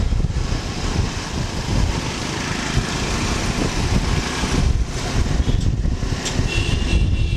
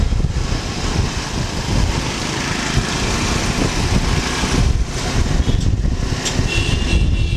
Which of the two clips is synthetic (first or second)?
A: first